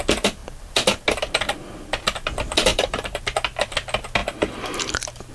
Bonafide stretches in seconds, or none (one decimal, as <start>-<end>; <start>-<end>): 0.0-2.7; 3.2-4.2